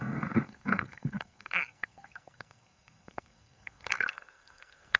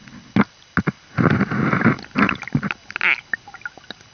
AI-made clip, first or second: first